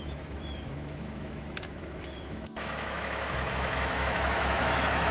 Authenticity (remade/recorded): remade